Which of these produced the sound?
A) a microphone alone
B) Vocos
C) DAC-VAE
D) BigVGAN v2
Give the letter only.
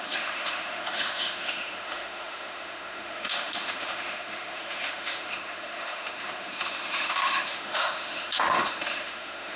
C